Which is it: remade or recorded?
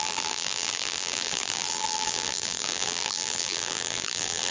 remade